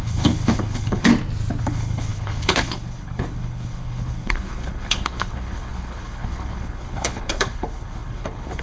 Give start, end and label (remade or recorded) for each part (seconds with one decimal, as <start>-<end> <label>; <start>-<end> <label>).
0.0-1.1 remade; 1.1-1.6 recorded; 1.6-8.6 remade